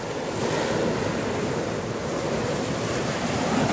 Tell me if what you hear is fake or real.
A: real